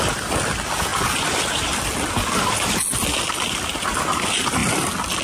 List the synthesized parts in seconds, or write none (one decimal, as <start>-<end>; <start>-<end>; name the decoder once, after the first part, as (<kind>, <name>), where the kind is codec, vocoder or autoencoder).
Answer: none